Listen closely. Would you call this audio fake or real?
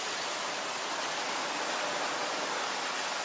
real